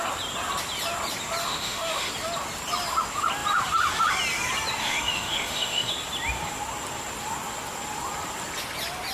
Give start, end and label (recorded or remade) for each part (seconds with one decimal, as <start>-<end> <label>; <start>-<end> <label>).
0.0-1.4 recorded; 1.4-2.1 remade; 2.1-4.8 recorded; 4.8-5.9 remade; 5.9-9.1 recorded